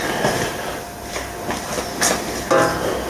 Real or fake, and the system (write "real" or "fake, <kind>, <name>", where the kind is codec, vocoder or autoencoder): real